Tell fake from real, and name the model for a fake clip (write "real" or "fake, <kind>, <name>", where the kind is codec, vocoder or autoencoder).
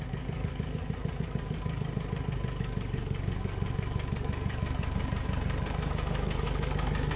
fake, codec, DAC